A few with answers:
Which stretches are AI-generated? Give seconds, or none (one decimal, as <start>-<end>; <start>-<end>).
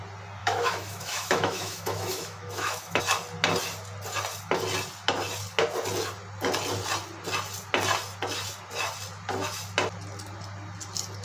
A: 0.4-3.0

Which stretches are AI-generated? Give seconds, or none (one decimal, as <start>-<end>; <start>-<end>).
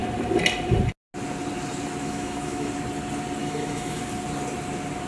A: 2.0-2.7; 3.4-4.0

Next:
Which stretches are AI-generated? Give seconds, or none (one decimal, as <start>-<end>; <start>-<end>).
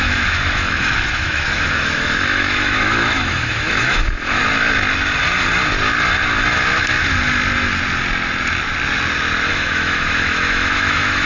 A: 0.0-4.4; 9.5-11.3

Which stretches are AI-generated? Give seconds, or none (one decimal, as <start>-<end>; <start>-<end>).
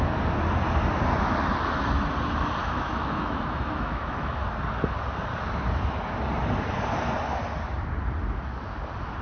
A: 2.6-4.3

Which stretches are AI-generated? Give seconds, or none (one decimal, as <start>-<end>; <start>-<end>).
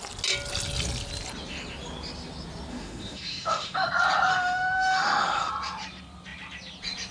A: 2.7-3.9; 4.3-5.5